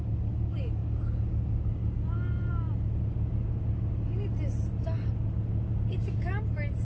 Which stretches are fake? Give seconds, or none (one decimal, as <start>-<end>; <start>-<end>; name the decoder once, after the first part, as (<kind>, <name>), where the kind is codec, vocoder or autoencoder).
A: none